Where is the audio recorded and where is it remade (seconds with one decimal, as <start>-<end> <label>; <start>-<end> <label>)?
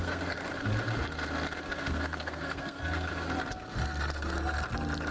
0.0-0.5 remade; 0.5-1.8 recorded; 1.8-3.1 remade; 3.1-5.1 recorded